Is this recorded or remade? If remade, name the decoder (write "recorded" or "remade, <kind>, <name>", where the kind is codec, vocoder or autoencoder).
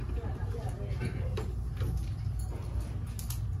recorded